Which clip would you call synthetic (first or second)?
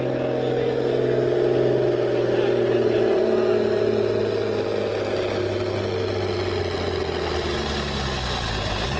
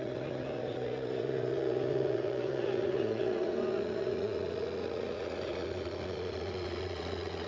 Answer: second